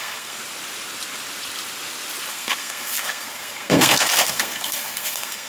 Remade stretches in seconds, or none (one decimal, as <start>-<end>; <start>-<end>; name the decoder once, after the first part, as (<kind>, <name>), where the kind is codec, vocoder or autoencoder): 0.0-0.4 (codec, SNAC); 2.3-5.5